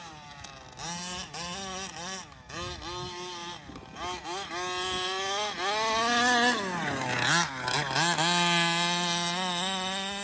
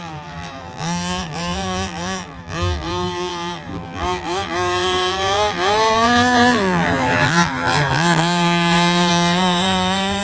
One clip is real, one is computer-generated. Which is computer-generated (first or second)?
second